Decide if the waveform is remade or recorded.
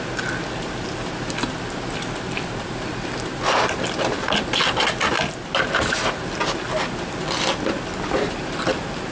recorded